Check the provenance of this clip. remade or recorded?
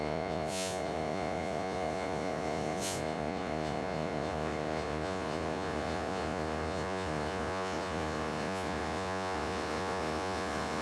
remade